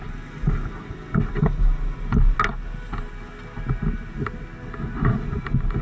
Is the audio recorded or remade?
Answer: recorded